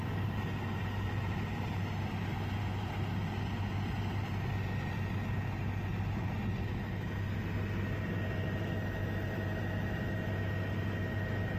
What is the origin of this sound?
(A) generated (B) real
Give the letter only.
B